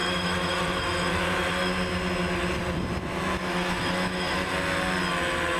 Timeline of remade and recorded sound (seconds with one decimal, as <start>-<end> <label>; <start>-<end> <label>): 0.0-1.5 remade; 1.5-3.4 recorded; 3.4-4.5 remade; 4.5-5.6 recorded